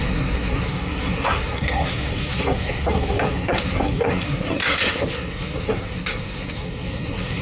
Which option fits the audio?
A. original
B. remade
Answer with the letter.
B